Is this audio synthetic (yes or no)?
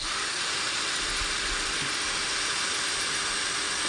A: no